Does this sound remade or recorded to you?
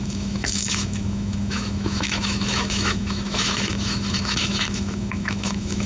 remade